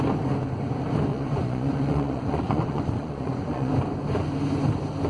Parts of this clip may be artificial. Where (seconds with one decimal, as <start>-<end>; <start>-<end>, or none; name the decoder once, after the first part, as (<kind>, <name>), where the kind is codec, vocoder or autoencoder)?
1.1-3.7 (vocoder, Vocos)